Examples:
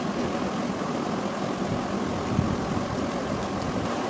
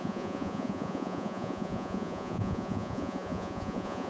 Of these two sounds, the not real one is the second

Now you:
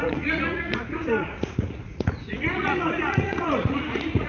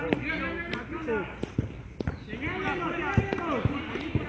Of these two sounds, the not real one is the first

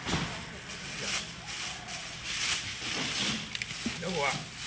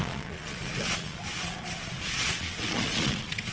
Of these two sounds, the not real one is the second